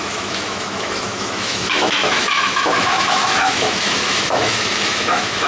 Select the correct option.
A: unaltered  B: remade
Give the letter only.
B